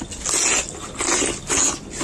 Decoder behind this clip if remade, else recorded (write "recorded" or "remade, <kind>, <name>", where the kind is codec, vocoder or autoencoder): recorded